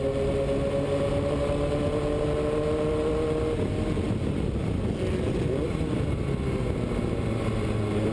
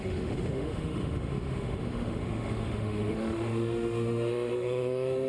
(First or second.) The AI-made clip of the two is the second